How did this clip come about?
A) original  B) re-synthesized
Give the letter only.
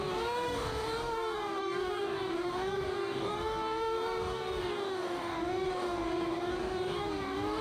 B